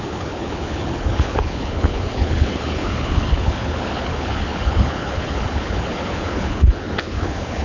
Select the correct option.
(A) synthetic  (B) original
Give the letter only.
A